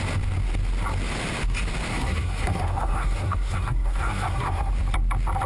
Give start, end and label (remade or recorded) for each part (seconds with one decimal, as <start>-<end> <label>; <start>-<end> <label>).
0.0-1.9 recorded; 1.9-4.7 remade; 4.7-5.5 recorded